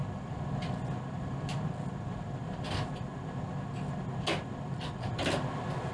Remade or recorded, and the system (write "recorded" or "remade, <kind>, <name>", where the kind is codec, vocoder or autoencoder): recorded